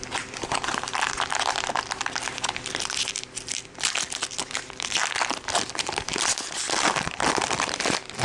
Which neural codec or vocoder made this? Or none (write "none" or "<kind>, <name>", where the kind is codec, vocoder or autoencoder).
vocoder, BigVGAN v2